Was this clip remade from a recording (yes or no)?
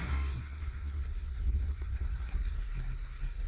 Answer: yes